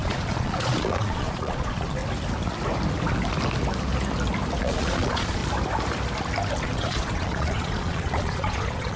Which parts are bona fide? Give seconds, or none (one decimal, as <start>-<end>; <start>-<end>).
2.0-4.6; 5.4-6.6